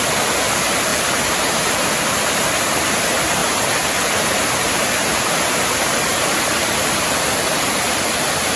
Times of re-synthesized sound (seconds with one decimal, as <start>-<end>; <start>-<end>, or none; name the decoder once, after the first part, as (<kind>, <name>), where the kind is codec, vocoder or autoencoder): 0.9-1.9 (vocoder, BigVGAN v2); 3.4-6.4